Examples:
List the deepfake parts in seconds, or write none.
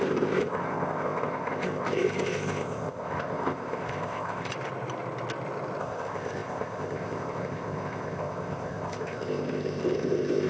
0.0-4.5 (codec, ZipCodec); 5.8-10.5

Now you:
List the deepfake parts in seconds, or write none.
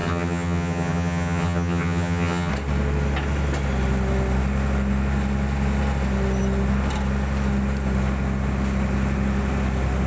0.0-2.5 (vocoder, HiFi-GAN)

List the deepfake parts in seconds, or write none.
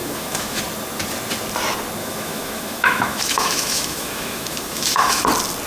0.0-0.6 (autoencoder, DAC-VAE); 2.0-5.2